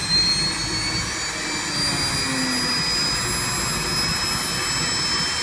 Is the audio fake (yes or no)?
no